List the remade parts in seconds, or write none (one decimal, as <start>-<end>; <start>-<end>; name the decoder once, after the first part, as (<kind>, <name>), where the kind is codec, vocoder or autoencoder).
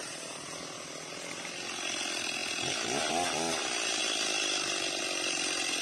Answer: none